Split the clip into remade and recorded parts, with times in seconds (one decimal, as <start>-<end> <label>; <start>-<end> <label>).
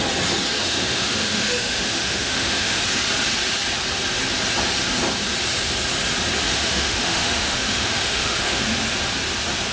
0.0-0.6 recorded; 0.6-2.8 remade; 2.8-6.5 recorded; 6.5-8.6 remade; 8.6-9.7 recorded